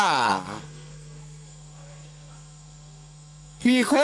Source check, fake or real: fake